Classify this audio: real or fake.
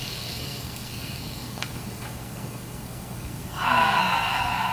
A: fake